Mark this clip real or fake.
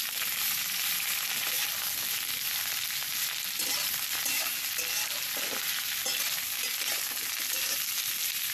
real